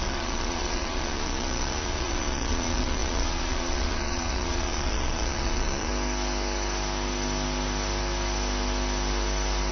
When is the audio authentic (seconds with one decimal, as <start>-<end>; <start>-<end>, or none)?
5.9-9.7

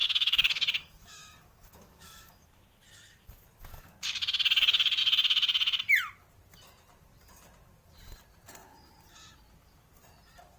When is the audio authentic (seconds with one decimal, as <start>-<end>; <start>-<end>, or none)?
2.5-10.6

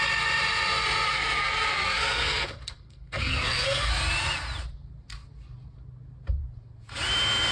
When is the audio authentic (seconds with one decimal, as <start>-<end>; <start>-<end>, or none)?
0.0-1.1; 3.9-7.5

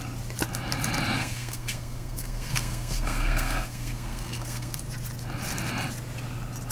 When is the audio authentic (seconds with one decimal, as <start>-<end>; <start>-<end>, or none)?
0.0-1.2; 4.8-6.7

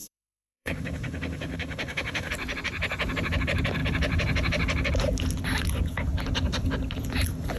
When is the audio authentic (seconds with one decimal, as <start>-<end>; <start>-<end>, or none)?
2.3-7.6